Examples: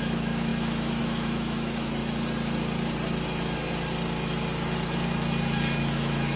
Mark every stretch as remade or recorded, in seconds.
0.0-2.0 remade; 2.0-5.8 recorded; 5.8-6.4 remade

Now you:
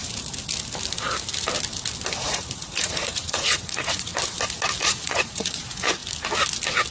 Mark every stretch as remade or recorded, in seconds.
0.0-2.2 recorded; 2.2-4.1 remade; 4.1-4.8 recorded; 4.8-6.0 remade; 6.0-6.9 recorded

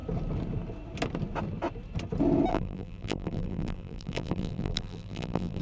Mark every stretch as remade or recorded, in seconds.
0.0-2.5 recorded; 2.5-5.6 remade

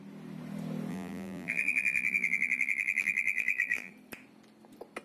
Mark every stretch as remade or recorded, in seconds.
0.0-0.9 recorded; 0.9-3.9 remade; 3.9-5.0 recorded